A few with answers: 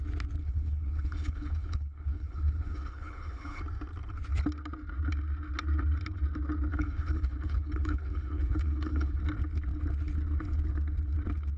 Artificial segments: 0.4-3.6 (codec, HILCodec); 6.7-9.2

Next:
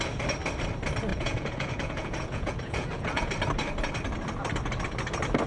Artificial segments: 1.1-3.3 (vocoder, Vocos)

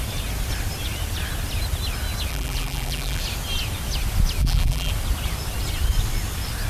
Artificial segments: 2.3-3.2 (vocoder, BigVGAN v2); 4.4-4.9

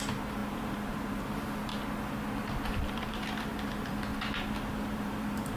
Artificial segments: 0.0-1.7 (vocoder, BigVGAN v2); 2.8-4.1; 4.7-5.6

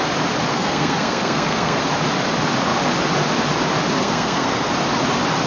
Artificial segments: 0.5-1.8 (codec, SNAC); 4.0-4.7

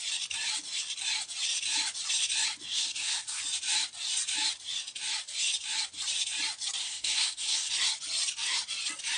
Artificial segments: 2.7-3.4 (codec, SNAC); 6.8-7.7